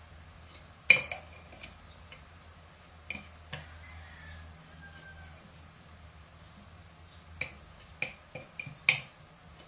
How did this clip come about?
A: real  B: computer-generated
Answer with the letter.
A